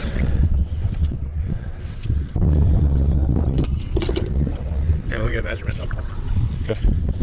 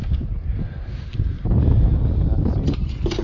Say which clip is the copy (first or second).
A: first